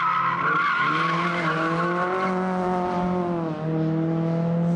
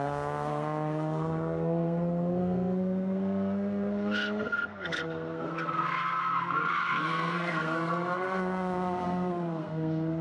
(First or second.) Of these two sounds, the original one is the first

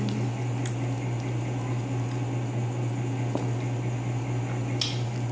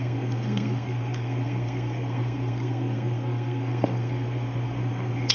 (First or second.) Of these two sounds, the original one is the first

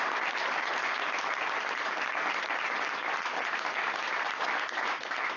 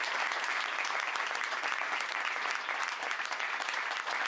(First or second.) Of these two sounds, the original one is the second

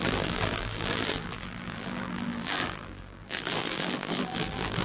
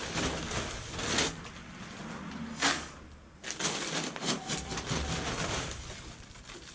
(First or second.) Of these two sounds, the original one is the second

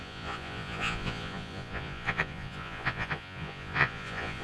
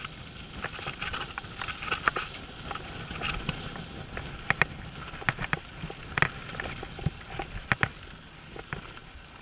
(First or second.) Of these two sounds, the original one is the second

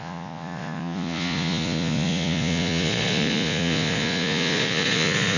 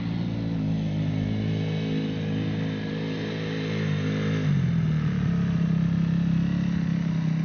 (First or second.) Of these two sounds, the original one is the second